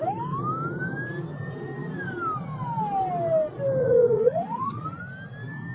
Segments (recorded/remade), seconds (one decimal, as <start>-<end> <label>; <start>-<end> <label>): 0.0-3.8 recorded; 3.8-5.0 remade; 5.0-5.7 recorded